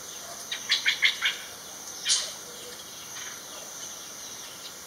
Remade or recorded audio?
recorded